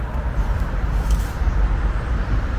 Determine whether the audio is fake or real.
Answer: fake